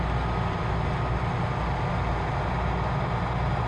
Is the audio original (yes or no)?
yes